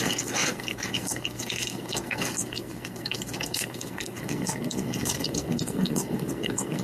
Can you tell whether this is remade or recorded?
remade